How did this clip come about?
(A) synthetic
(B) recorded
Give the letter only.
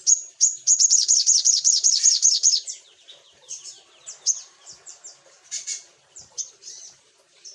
A